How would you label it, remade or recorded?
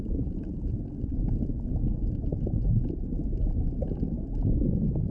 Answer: recorded